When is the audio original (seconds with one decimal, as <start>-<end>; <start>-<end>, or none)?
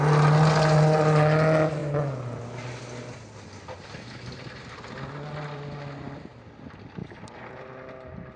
0.0-7.0; 7.6-8.4